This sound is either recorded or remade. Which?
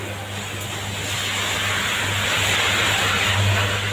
recorded